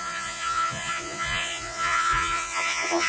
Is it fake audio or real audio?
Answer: fake